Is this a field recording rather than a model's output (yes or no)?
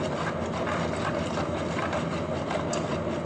yes